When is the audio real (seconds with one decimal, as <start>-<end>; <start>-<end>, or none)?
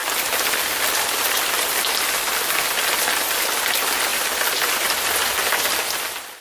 2.0-4.1; 5.6-6.4